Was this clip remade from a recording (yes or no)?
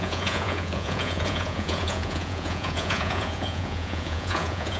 yes